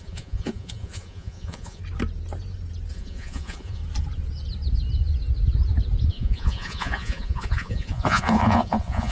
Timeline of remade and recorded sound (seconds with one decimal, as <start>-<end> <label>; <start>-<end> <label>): 0.0-1.8 remade; 1.8-2.9 recorded; 2.9-3.8 remade; 3.8-6.1 recorded; 6.1-9.1 remade